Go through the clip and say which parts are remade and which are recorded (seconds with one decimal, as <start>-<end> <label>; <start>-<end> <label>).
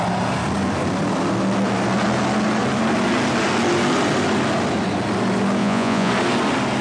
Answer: 0.0-5.6 recorded; 5.6-6.1 remade; 6.1-6.8 recorded